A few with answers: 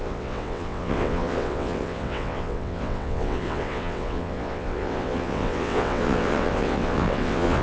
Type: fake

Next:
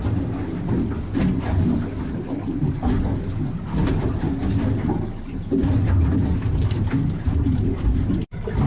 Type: real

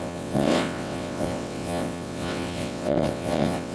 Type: fake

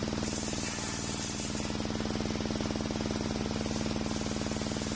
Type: real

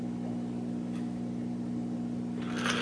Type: real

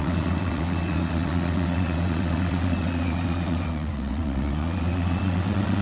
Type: fake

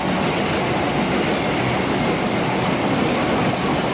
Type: real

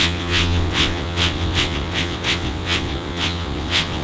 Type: fake